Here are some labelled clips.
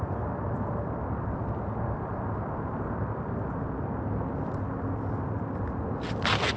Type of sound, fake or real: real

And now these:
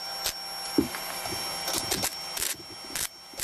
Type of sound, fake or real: real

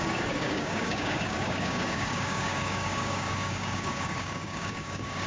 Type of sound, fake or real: fake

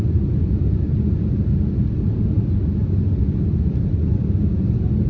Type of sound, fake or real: real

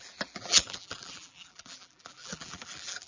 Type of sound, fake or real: fake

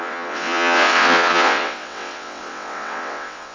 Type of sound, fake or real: fake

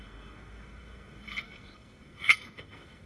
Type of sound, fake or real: fake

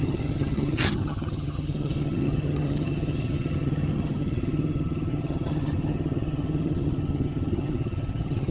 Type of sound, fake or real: fake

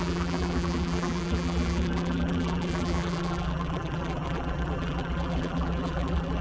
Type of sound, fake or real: fake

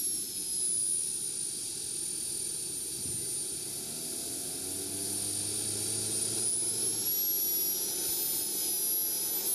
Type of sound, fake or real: real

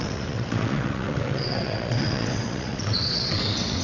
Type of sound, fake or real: fake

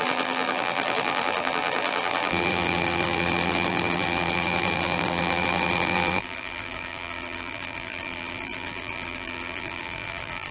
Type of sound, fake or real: fake